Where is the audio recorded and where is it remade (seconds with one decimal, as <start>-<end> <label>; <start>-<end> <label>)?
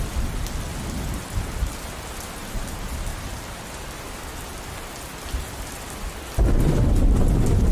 0.0-7.7 recorded